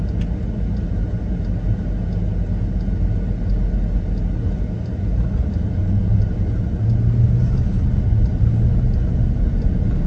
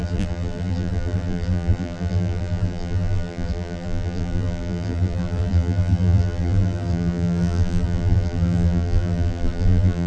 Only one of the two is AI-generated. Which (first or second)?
second